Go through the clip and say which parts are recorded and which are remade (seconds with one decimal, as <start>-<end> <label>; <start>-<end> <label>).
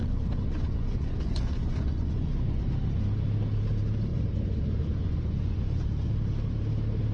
0.0-2.6 remade; 2.6-4.1 recorded; 4.1-5.9 remade; 5.9-7.1 recorded